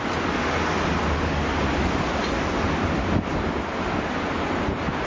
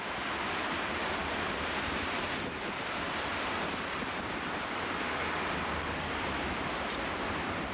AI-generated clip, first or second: second